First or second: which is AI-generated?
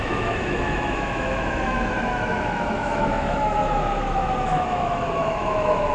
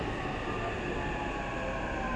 first